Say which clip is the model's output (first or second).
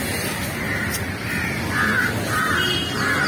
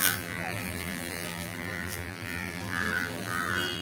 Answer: second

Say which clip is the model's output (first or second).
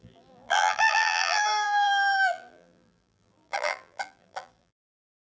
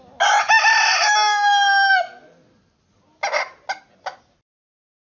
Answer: first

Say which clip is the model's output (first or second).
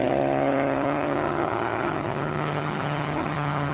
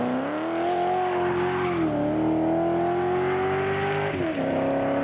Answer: first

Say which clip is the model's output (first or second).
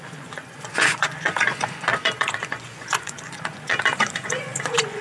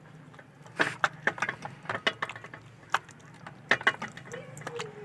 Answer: first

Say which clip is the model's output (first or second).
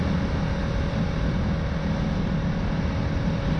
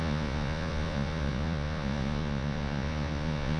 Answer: second